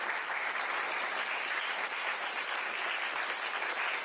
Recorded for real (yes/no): yes